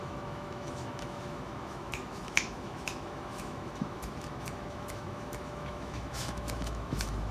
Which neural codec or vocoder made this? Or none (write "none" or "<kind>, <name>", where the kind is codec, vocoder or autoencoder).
autoencoder, DAC-VAE